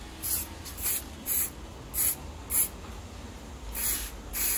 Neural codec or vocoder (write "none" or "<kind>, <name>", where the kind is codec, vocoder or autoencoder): none